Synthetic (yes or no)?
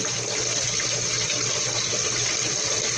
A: no